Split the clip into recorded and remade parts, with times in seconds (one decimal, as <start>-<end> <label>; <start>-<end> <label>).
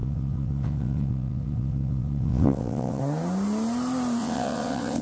0.0-3.0 remade; 3.0-4.2 recorded; 4.2-5.0 remade